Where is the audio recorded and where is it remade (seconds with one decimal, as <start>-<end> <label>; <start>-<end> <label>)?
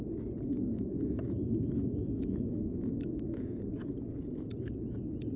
0.0-0.5 recorded; 0.5-3.6 remade; 3.6-5.4 recorded